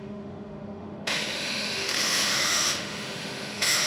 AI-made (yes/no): yes